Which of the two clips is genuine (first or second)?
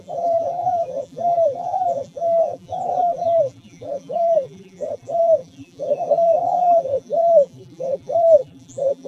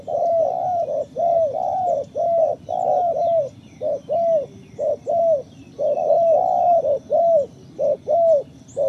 second